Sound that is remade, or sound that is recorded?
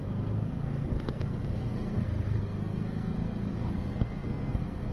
remade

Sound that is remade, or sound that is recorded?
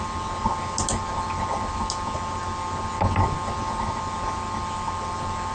recorded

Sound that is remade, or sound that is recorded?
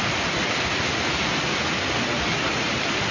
recorded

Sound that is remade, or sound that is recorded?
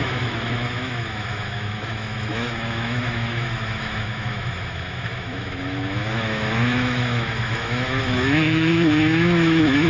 remade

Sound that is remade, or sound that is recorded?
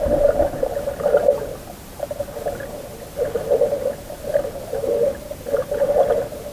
recorded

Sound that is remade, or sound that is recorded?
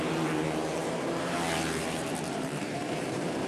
remade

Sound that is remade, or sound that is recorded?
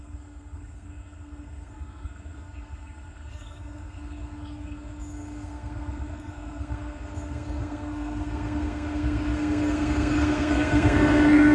remade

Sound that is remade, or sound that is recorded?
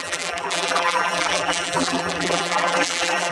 remade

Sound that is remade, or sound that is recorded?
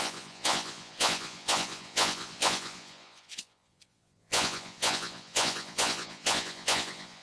remade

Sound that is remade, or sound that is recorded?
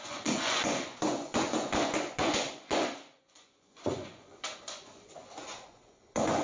remade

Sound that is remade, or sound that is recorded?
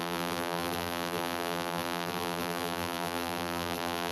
remade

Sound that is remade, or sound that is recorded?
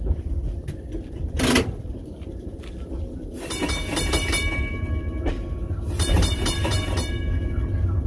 recorded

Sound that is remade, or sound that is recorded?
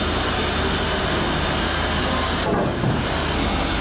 recorded